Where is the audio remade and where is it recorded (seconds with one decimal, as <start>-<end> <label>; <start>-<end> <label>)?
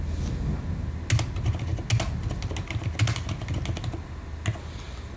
0.0-5.2 recorded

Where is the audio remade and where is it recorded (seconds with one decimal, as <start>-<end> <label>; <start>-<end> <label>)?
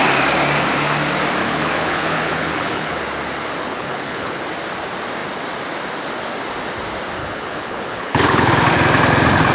0.0-1.4 recorded; 1.4-3.0 remade; 3.0-3.6 recorded; 3.6-4.3 remade; 4.3-7.2 recorded; 7.2-8.5 remade; 8.5-9.5 recorded